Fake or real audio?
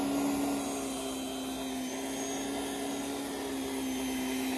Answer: real